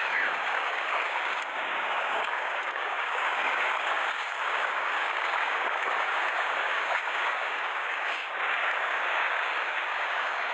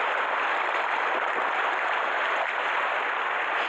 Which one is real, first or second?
second